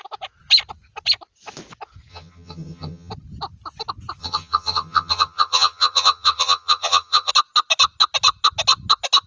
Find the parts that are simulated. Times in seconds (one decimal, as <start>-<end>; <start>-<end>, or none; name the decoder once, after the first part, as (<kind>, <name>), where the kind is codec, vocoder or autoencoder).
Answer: 2.1-3.1 (vocoder, HiFi-GAN); 4.2-7.3

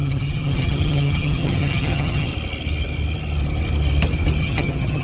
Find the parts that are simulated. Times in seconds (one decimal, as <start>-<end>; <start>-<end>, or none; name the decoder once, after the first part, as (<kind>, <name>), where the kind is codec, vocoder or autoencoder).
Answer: 0.0-2.3 (vocoder, HiFi-GAN); 4.4-5.0

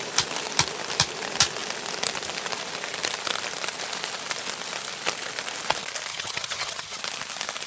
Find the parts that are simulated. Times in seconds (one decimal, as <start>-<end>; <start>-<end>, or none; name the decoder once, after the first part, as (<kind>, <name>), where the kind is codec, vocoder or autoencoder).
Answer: 6.1-7.0 (vocoder, HiFi-GAN)

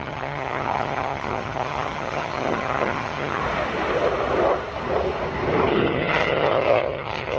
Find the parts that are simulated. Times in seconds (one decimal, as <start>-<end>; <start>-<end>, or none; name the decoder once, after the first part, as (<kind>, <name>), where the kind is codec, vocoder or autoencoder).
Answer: 0.0-3.4 (vocoder, HiFi-GAN); 5.7-7.4